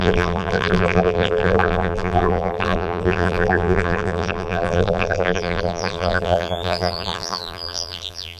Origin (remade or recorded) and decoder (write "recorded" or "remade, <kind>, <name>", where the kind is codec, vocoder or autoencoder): remade, vocoder, BigVGAN v2